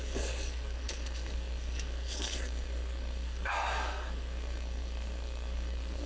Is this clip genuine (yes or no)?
no